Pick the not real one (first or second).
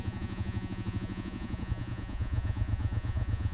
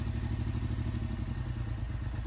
first